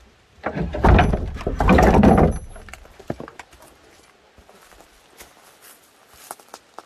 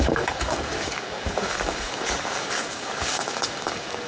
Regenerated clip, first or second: second